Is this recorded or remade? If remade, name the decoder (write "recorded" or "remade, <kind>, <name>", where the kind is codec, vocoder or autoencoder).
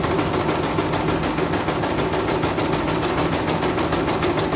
recorded